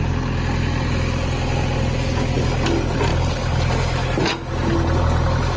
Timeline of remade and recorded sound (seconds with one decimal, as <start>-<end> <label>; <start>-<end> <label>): 0.0-5.6 recorded